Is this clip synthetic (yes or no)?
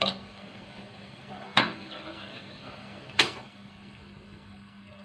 yes